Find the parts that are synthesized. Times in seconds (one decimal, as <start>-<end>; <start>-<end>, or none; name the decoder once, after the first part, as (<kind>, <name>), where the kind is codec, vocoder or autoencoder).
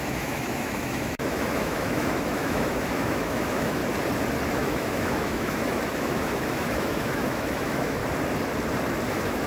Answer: 0.0-3.8 (autoencoder, DAC-VAE); 4.5-8.0; 9.1-9.5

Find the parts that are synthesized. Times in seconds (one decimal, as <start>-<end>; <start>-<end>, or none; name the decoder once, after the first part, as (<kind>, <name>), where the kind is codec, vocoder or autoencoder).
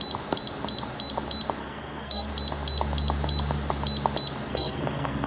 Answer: 1.6-2.3 (codec, SNAC); 4.5-5.3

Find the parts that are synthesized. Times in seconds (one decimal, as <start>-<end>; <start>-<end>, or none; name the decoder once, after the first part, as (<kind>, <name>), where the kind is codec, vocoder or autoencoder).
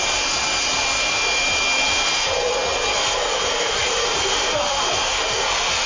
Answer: none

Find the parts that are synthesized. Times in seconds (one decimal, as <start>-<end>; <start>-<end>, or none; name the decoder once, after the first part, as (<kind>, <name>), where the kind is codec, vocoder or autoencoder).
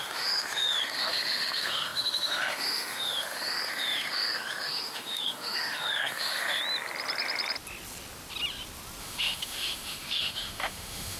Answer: 0.0-6.6 (autoencoder, DAC-VAE); 9.0-11.2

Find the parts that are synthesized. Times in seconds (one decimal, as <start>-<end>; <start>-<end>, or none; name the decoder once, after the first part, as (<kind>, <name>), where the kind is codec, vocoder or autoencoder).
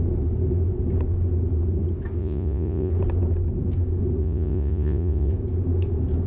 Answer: 2.2-2.9 (vocoder, Vocos); 4.2-5.3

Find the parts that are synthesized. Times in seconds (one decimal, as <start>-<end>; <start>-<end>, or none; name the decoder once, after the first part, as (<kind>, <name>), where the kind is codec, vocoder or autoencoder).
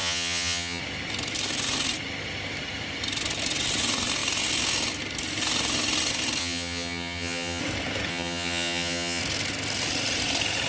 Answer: 0.0-0.8 (vocoder, HiFi-GAN); 6.4-7.6; 8.1-9.2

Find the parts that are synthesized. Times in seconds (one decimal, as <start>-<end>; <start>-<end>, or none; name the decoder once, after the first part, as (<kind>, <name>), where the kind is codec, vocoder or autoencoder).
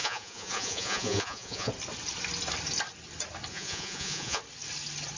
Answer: 0.0-1.7 (vocoder, Vocos); 3.5-4.4